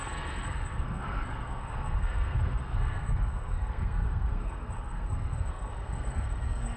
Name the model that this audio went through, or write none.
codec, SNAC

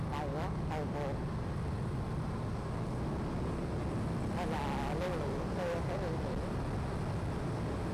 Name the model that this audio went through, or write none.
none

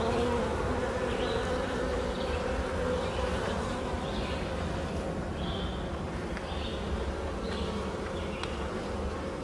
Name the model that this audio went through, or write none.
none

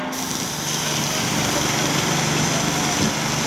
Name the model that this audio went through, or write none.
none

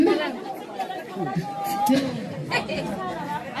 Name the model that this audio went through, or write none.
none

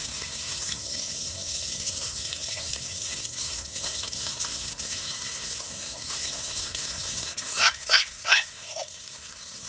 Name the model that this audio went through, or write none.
codec, SNAC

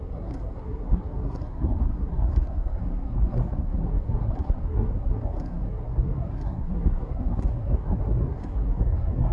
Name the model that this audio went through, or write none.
codec, SNAC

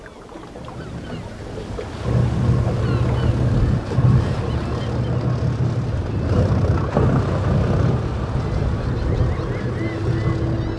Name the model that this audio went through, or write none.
none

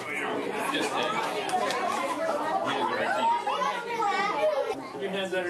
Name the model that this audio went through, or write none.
none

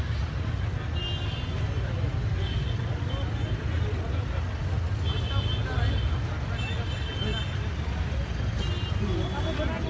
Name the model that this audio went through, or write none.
none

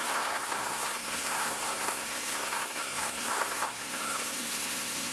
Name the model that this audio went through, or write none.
codec, SNAC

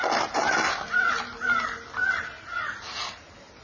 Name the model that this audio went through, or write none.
none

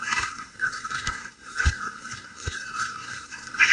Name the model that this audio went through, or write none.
codec, SNAC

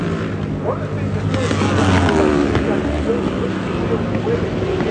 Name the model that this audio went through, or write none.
none